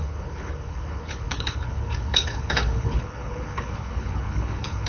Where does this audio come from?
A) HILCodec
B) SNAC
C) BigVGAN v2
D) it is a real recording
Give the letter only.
A